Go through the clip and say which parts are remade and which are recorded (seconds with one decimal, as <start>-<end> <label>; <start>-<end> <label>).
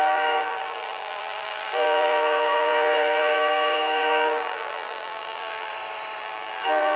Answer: 0.0-5.7 remade; 5.7-6.2 recorded; 6.2-7.0 remade